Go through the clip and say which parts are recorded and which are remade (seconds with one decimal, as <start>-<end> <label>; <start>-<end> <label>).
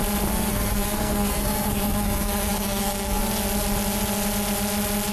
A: 0.0-0.5 recorded; 0.5-3.2 remade; 3.2-5.1 recorded